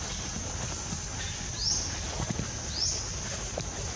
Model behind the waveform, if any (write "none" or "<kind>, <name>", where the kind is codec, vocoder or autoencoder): none